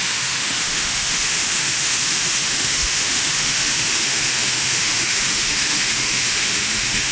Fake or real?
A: fake